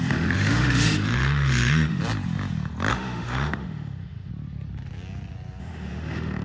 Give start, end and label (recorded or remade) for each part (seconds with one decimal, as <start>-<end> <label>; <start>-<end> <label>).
0.0-2.0 remade; 2.0-2.9 recorded; 2.9-4.3 remade; 4.3-5.6 recorded; 5.6-6.4 remade